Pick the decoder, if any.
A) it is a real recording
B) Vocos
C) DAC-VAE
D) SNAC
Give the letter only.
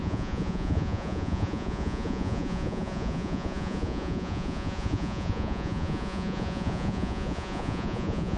B